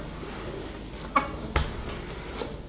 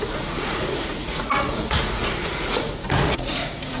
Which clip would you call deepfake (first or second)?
second